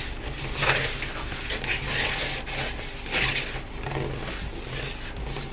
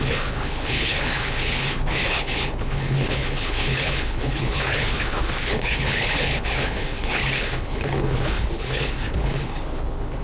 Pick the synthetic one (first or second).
second